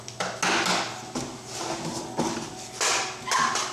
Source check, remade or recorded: recorded